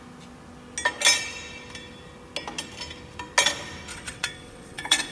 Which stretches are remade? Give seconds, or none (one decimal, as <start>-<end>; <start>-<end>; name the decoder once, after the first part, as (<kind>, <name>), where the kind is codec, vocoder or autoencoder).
3.9-5.1 (vocoder, WaveNeXt)